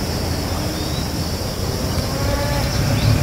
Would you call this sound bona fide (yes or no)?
no